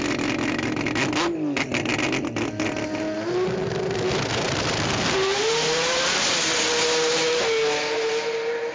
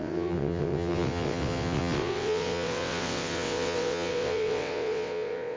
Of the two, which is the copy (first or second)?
second